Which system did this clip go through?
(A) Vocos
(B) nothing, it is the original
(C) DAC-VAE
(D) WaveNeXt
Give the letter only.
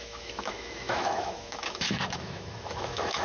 C